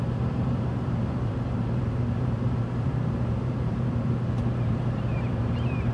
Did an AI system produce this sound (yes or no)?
yes